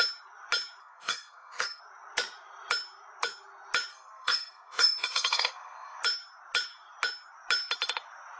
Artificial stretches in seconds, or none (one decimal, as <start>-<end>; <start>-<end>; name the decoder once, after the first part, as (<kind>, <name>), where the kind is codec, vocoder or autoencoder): 0.8-1.8 (codec, SNAC); 3.9-6.0